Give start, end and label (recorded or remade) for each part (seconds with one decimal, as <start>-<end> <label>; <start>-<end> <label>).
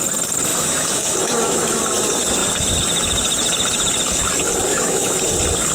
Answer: 0.0-0.5 recorded; 0.5-1.8 remade; 1.8-4.7 recorded; 4.7-5.2 remade; 5.2-5.7 recorded